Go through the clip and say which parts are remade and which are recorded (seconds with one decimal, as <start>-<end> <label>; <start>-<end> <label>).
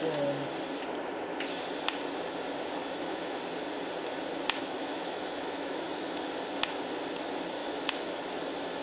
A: 0.0-2.8 recorded; 2.8-3.4 remade; 3.4-4.6 recorded; 4.6-6.3 remade; 6.3-7.6 recorded; 7.6-8.2 remade; 8.2-8.8 recorded